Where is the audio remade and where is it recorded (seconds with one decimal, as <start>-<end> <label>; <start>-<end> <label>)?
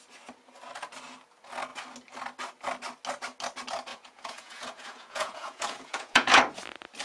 0.0-3.9 recorded; 3.9-6.4 remade; 6.4-7.0 recorded